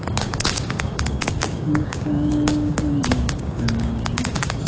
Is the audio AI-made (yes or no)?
yes